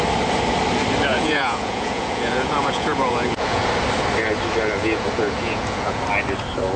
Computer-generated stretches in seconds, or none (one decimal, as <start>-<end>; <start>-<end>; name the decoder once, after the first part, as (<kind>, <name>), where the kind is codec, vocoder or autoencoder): 1.1-3.7 (vocoder, Vocos); 4.8-6.0